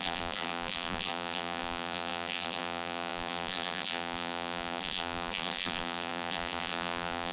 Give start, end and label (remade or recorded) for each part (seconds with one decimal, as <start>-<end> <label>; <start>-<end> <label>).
0.0-7.3 remade